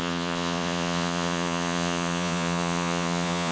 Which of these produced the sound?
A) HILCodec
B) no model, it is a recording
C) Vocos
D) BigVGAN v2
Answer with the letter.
C